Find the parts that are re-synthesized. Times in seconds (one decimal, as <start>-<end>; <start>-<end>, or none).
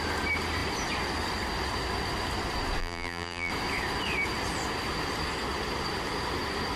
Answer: 2.8-3.5